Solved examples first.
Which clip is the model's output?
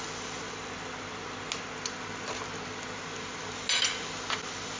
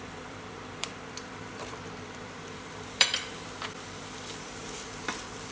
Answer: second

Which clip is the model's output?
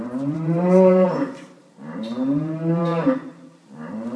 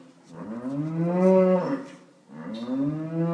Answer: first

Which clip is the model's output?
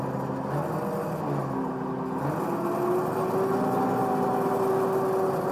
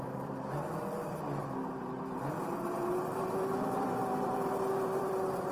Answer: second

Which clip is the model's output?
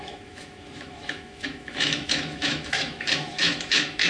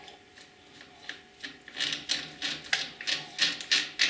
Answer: first